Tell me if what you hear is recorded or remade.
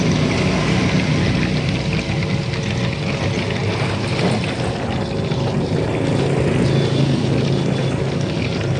recorded